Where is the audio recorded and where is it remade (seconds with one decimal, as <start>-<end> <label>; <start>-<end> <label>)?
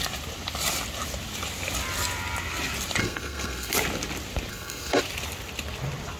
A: 0.0-3.0 recorded; 3.0-3.7 remade; 3.7-4.5 recorded; 4.5-5.0 remade; 5.0-6.2 recorded